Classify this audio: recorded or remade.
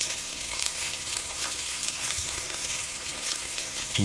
remade